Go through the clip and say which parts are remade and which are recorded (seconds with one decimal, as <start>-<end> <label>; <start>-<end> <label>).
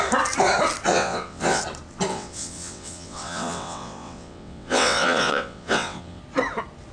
0.0-0.9 recorded; 0.9-1.6 remade; 1.6-2.1 recorded; 2.1-6.2 remade; 6.2-6.9 recorded